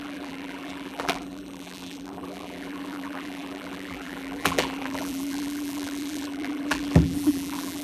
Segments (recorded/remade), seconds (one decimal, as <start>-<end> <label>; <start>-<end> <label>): 0.0-7.8 remade